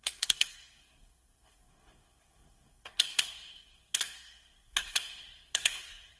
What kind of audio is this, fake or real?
fake